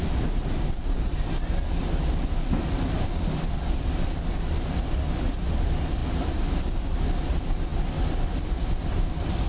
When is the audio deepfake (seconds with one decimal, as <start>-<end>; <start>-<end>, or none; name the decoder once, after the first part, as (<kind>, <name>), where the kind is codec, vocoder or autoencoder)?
none